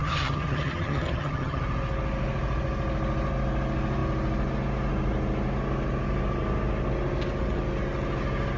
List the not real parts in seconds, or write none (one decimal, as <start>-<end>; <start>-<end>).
0.0-1.6